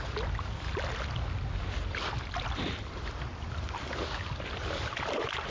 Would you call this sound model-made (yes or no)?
no